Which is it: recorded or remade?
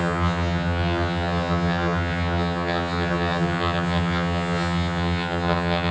remade